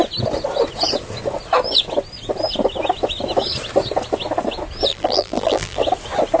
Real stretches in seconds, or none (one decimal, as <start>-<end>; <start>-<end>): 0.0-4.9; 5.8-6.4